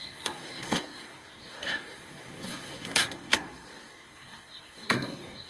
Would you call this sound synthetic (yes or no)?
yes